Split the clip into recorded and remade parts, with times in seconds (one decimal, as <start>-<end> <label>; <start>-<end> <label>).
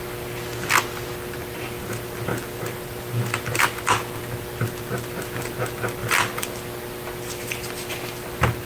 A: 0.0-2.3 recorded; 2.3-5.4 remade; 5.4-8.7 recorded